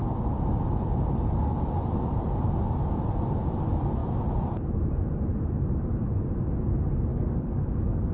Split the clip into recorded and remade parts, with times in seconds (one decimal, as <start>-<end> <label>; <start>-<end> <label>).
0.0-7.1 recorded; 7.1-8.1 remade